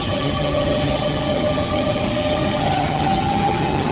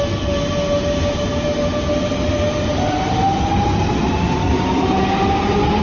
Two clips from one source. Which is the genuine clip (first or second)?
second